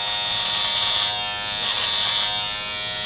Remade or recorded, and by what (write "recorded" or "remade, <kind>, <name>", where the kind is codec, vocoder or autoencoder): recorded